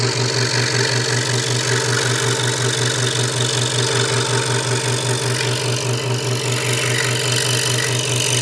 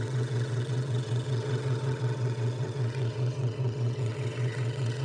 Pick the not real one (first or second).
second